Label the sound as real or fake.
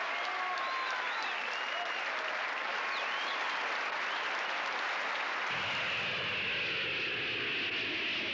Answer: real